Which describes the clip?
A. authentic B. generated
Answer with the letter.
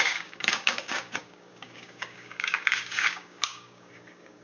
B